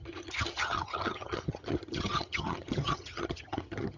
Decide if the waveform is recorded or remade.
remade